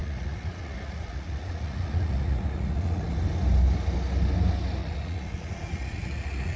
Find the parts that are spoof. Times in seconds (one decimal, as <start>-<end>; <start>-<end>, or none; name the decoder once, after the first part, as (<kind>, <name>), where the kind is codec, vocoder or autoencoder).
0.0-3.2 (vocoder, Vocos); 4.8-6.6